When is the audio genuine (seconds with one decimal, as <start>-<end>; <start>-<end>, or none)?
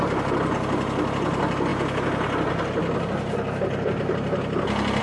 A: 0.0-5.0